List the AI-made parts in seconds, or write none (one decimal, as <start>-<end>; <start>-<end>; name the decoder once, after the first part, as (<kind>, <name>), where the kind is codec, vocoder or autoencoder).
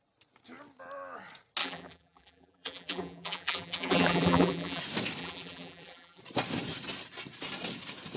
1.6-4.8 (vocoder, BigVGAN v2); 5.2-6.2